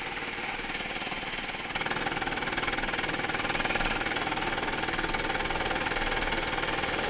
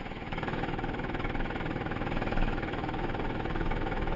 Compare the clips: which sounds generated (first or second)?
second